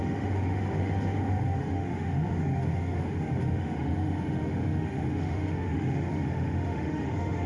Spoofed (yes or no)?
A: yes